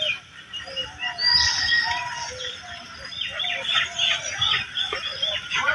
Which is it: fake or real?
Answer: real